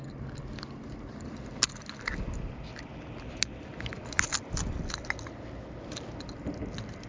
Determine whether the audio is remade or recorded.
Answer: recorded